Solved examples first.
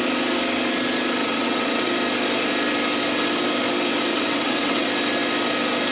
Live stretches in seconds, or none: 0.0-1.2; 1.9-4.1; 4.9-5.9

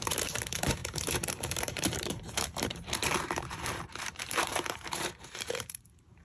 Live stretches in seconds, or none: none